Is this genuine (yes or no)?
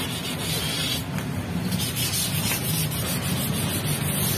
yes